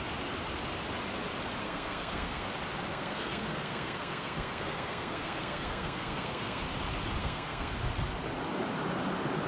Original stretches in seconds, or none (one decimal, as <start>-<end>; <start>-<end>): 0.0-1.6; 2.5-2.9; 6.6-7.2; 7.7-9.5